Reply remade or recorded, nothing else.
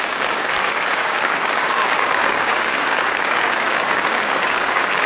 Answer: remade